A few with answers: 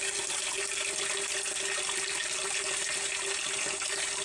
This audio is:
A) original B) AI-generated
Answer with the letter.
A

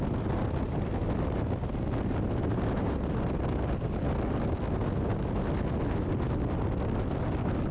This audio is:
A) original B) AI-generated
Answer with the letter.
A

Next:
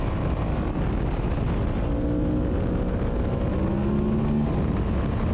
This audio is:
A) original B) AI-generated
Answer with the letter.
A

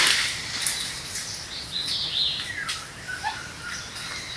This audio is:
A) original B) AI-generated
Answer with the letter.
A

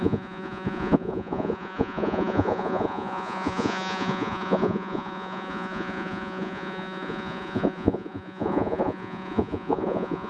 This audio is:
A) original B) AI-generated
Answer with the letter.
B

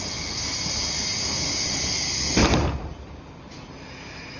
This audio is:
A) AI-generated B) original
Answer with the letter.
B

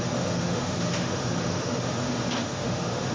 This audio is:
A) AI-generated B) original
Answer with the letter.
A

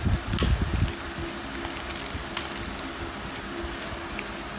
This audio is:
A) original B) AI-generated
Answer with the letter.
A